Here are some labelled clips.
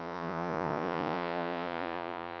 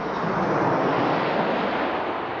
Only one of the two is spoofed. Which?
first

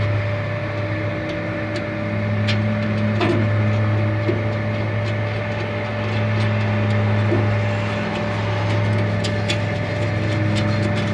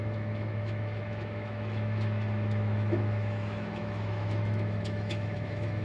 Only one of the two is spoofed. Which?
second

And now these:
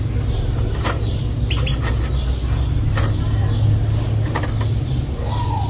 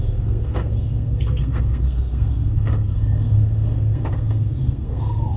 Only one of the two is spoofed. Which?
second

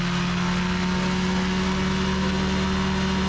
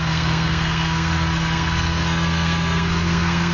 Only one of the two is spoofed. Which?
second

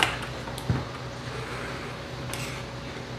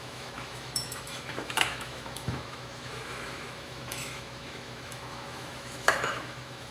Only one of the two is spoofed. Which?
second